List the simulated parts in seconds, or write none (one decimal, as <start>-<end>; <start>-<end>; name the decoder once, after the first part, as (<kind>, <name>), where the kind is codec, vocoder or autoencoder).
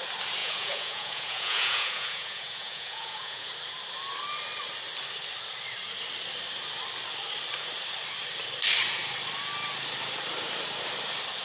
0.4-3.5 (vocoder, Vocos)